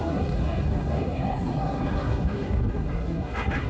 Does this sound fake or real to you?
fake